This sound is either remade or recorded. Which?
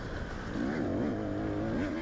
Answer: recorded